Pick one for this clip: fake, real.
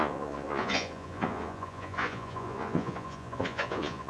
fake